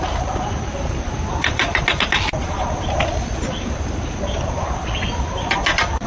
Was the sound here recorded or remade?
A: recorded